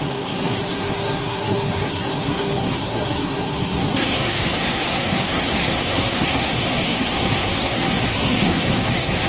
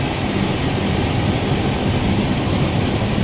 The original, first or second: second